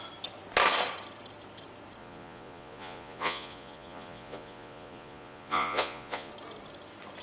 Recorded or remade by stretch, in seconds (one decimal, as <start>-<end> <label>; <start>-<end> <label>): 0.0-2.0 recorded; 2.0-6.3 remade; 6.3-7.2 recorded